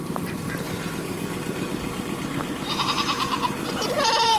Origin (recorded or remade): remade